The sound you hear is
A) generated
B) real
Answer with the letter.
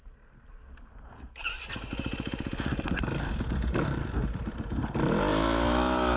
B